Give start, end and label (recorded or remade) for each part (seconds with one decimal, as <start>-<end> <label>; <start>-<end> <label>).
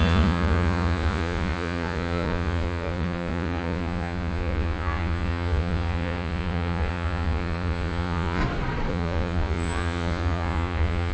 0.0-8.4 remade; 8.4-8.9 recorded; 8.9-11.1 remade